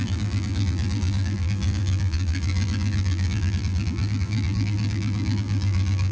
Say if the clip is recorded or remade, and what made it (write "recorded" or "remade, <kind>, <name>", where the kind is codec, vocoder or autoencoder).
remade, vocoder, BigVGAN v2